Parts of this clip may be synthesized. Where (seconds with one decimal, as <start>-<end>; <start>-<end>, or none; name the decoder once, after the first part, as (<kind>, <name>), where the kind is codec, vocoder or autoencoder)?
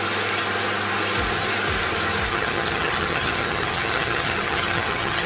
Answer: 2.3-5.3 (vocoder, HiFi-GAN)